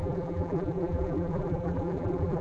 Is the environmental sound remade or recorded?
remade